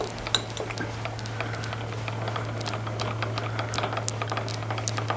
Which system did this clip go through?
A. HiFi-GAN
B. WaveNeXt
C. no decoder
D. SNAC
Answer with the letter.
C